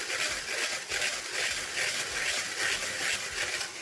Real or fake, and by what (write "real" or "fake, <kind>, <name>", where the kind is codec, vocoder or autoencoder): real